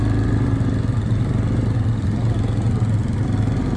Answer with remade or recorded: recorded